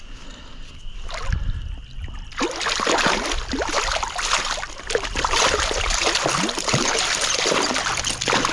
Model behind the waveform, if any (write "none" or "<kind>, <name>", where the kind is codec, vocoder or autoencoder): none